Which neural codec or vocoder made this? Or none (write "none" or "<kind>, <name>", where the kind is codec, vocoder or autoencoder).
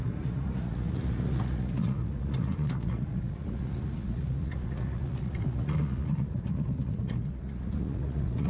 vocoder, Vocos